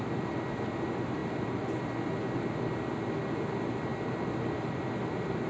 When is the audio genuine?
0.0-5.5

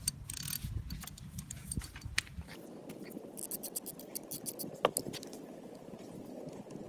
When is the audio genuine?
0.0-6.9

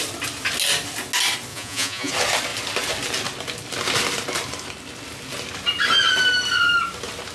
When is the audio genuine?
0.0-1.5; 2.1-7.3